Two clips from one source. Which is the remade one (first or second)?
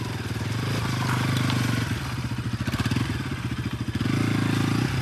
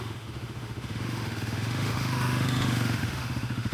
second